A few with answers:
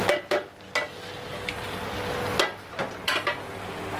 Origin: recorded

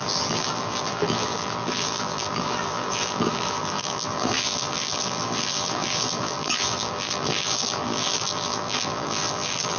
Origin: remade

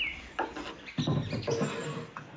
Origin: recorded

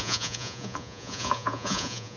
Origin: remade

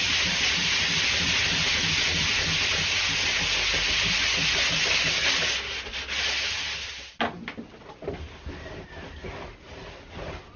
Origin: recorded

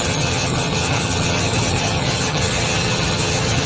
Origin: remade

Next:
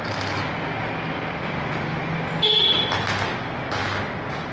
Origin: recorded